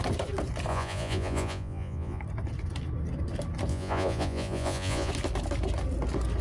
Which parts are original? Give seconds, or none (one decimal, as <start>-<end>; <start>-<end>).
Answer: 0.0-0.7; 2.2-3.7; 5.1-6.4